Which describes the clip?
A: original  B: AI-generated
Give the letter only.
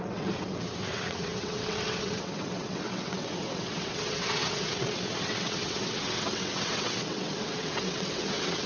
B